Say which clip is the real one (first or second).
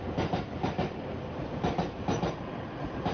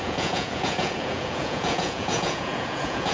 first